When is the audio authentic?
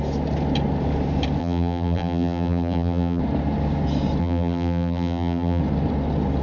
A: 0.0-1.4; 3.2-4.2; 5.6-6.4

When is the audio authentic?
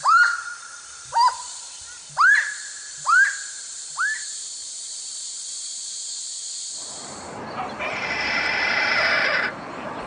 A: none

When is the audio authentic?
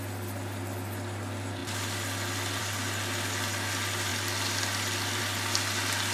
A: 0.0-6.1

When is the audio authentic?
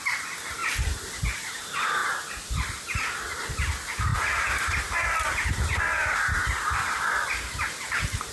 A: 0.0-2.0; 3.4-4.1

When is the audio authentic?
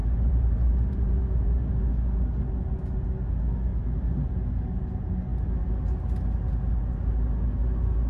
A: 1.7-3.7; 4.3-8.1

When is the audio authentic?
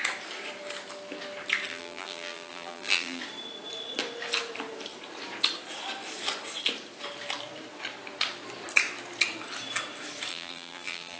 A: 0.0-1.7; 3.2-10.3